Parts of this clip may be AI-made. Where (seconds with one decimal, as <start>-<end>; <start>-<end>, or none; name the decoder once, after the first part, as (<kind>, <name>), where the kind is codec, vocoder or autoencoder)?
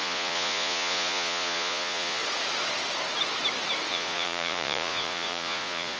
0.0-2.2 (vocoder, Vocos); 3.9-6.0